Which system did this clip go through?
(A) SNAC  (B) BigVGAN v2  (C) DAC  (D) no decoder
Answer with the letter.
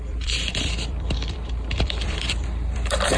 B